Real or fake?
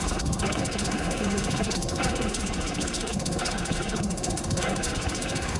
fake